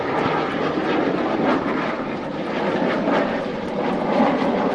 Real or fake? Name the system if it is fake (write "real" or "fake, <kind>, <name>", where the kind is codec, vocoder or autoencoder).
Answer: real